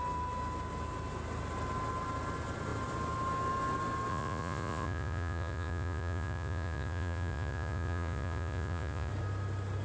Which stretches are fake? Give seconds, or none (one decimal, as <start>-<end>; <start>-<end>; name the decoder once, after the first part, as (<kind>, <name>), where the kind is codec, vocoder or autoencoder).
4.1-9.1 (vocoder, Vocos)